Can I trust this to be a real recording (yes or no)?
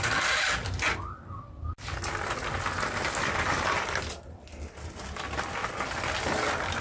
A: yes